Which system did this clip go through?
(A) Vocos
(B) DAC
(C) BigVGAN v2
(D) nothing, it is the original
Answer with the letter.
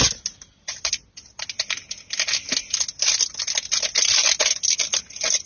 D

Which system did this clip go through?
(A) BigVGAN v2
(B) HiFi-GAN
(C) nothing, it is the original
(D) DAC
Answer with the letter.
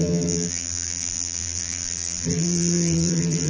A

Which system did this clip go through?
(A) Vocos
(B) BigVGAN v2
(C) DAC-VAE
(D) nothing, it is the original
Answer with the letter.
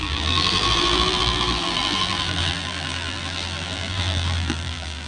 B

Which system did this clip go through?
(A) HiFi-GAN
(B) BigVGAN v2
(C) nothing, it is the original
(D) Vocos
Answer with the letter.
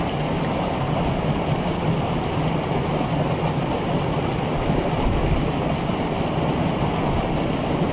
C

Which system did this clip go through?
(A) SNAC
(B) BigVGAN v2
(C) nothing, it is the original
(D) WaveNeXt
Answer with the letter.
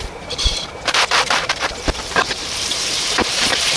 B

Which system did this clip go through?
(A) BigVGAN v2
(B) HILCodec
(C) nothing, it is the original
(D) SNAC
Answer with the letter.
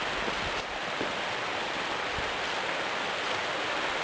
C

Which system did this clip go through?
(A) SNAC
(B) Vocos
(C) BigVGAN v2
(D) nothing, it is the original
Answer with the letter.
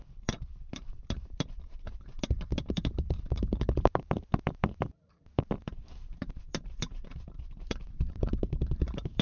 C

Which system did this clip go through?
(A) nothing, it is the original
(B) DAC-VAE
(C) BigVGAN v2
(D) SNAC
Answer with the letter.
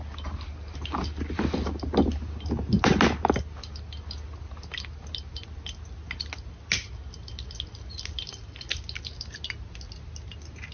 A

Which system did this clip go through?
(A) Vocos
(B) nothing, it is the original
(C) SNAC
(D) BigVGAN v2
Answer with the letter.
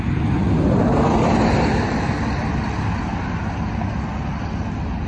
B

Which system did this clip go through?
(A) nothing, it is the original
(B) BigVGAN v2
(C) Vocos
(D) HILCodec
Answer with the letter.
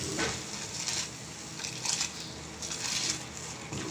A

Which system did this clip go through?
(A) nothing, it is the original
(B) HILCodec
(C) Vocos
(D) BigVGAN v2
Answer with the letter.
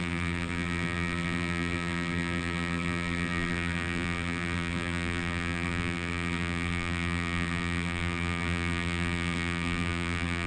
D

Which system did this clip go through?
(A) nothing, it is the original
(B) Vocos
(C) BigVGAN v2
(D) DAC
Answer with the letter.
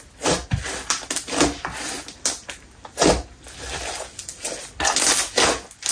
A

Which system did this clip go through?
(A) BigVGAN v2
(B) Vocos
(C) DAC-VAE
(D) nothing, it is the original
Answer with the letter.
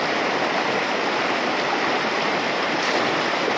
A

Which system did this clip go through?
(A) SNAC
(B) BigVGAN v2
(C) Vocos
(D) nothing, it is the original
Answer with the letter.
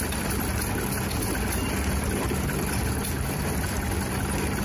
D